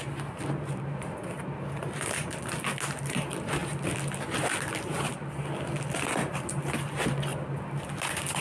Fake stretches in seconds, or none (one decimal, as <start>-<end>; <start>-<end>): none